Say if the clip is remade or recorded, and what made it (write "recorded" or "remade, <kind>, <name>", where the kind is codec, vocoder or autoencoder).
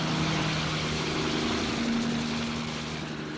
recorded